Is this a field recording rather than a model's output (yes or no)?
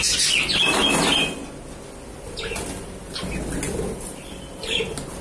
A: yes